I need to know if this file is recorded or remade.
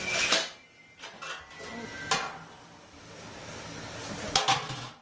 recorded